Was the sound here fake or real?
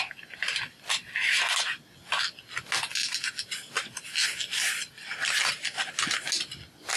real